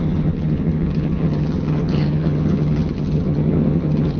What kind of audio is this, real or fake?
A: fake